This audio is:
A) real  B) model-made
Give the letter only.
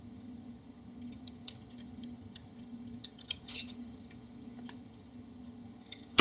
B